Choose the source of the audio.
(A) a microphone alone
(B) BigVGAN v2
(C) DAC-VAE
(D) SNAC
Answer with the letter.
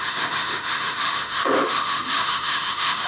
C